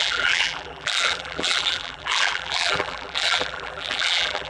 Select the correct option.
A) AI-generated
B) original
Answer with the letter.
A